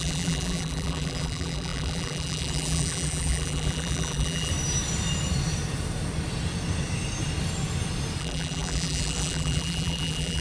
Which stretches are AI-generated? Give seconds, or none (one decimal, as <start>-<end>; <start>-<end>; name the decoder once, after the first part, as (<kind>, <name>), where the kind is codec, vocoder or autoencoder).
0.0-4.5 (vocoder, BigVGAN v2); 8.2-10.4